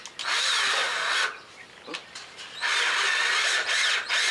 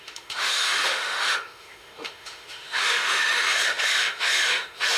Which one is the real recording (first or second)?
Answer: first